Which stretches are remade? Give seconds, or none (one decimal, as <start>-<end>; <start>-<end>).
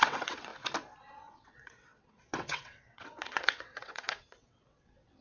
0.0-0.5; 1.1-5.2